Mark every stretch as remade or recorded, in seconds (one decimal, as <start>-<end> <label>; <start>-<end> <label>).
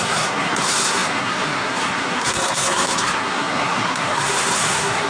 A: 0.0-5.1 remade